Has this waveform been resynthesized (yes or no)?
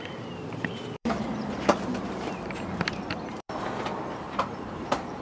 yes